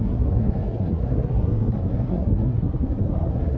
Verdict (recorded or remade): remade